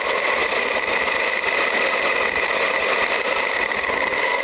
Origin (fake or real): real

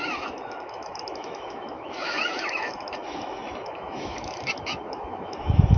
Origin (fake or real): fake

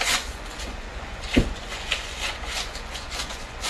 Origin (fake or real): fake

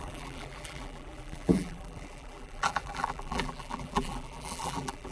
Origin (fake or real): fake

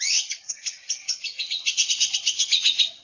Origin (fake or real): fake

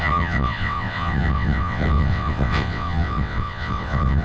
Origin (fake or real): fake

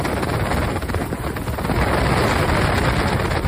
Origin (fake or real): real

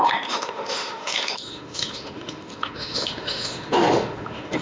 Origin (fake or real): fake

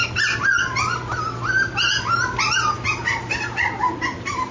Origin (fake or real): real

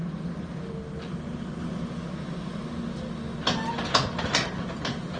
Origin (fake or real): real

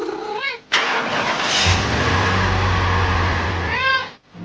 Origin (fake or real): real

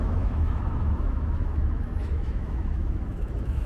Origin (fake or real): fake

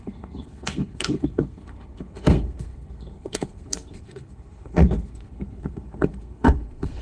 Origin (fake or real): fake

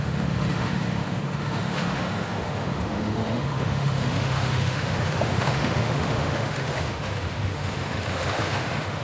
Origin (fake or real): fake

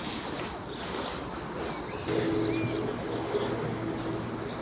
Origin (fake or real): real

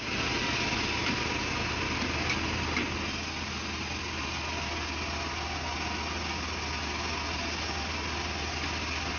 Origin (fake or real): real